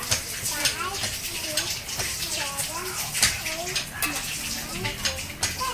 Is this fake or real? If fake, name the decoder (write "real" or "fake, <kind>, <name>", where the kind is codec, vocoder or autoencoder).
real